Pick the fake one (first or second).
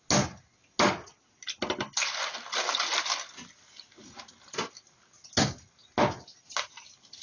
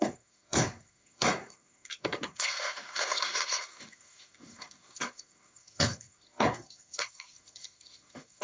second